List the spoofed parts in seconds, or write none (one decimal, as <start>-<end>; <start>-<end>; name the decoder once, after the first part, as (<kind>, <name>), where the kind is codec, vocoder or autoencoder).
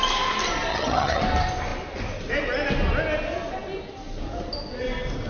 0.7-1.2 (vocoder, HiFi-GAN)